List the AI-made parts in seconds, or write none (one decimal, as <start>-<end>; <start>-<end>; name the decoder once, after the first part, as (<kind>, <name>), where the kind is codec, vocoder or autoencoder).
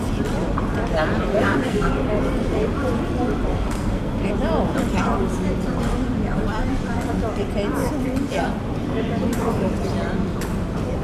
1.3-1.9 (codec, SNAC); 3.5-4.3